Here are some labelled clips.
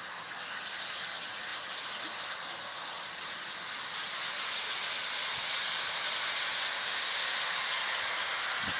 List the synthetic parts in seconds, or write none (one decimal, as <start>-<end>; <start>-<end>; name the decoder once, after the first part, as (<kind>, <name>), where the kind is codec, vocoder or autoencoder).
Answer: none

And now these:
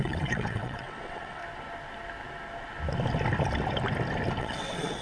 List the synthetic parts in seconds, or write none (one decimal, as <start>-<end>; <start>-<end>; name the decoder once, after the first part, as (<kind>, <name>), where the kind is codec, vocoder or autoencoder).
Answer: 0.0-1.4 (vocoder, WaveNeXt); 4.4-5.0

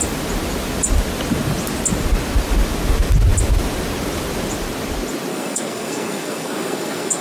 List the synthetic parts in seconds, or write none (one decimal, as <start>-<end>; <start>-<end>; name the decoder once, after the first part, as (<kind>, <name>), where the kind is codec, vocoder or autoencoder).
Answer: 5.3-7.2 (codec, SNAC)

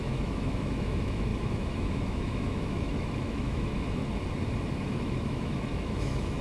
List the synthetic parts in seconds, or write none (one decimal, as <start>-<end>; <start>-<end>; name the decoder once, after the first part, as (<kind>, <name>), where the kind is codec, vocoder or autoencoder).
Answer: 0.0-4.0 (autoencoder, DAC-VAE); 4.7-6.4

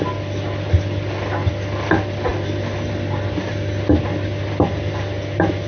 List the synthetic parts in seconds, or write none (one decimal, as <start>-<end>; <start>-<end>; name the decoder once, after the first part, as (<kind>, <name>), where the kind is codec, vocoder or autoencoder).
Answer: none

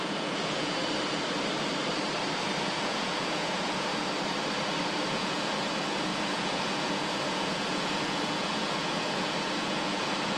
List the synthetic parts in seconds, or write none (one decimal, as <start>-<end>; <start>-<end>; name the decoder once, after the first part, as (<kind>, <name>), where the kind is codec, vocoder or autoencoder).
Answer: 0.0-0.8 (vocoder, Vocos); 2.7-3.9; 5.1-10.4

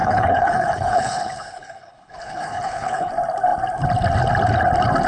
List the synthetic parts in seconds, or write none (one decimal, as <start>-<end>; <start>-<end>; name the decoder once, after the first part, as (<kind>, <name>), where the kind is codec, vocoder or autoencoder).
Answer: 0.0-3.1 (codec, HILCodec)